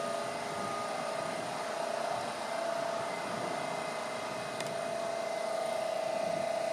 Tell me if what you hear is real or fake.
real